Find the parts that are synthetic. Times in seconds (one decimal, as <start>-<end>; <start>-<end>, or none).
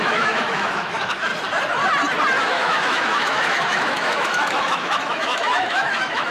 0.0-1.3; 2.4-6.3